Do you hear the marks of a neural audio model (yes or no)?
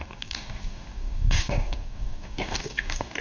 yes